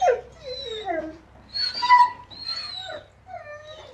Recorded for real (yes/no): yes